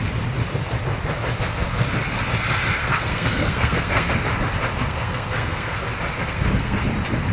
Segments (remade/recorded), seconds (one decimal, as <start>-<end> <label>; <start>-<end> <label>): 0.0-2.8 recorded; 2.8-4.1 remade; 4.1-4.8 recorded; 4.8-5.7 remade; 5.7-6.2 recorded; 6.2-6.8 remade; 6.8-7.3 recorded